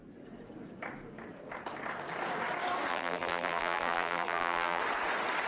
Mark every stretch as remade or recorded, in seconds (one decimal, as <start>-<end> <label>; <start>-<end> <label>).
0.0-2.9 recorded; 2.9-4.8 remade; 4.8-5.5 recorded